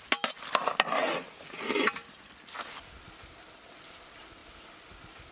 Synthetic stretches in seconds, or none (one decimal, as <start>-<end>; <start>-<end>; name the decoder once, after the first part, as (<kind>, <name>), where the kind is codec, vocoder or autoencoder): none